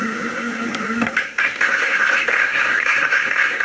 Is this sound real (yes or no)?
no